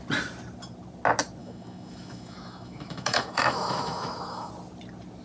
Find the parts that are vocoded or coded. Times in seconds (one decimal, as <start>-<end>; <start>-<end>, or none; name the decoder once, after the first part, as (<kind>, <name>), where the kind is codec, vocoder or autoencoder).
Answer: 1.4-4.5 (autoencoder, DAC-VAE)

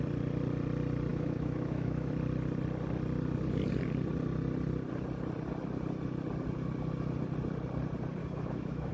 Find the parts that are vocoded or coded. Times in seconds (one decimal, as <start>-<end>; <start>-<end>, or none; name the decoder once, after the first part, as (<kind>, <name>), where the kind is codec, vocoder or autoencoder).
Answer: 1.1-2.1 (autoencoder, DAC-VAE); 8.2-8.9

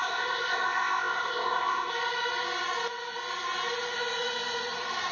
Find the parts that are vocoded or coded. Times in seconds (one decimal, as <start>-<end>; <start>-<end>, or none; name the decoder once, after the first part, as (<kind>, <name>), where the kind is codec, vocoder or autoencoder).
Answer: 0.0-1.9 (codec, ZipCodec)

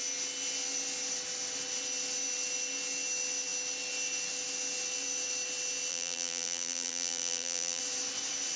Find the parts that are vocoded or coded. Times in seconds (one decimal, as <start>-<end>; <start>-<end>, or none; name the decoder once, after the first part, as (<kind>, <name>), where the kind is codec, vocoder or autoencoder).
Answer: 5.9-7.8 (vocoder, BigVGAN v2)

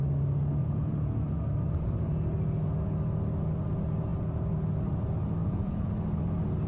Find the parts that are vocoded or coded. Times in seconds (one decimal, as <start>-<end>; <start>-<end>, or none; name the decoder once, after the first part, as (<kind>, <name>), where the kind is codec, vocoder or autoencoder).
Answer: 0.6-1.2 (vocoder, Vocos); 5.4-5.9

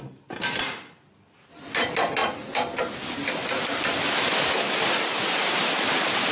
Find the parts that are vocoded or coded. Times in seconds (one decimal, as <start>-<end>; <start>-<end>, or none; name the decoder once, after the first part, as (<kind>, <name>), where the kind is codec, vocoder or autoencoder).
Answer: none

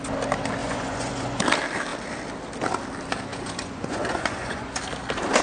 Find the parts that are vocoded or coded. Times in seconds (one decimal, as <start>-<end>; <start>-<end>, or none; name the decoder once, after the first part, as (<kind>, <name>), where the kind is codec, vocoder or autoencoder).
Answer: 0.6-1.4 (vocoder, Vocos); 3.3-4.8